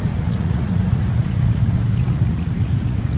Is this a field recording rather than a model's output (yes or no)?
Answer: no